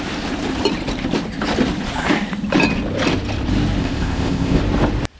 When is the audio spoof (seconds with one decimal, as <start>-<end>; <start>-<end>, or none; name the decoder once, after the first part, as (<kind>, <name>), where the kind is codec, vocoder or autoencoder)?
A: 3.8-4.6 (codec, ZipCodec)